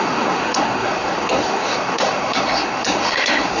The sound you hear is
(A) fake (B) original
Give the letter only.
A